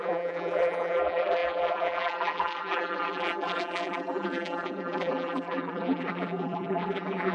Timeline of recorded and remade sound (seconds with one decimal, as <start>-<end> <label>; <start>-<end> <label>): 0.0-7.3 remade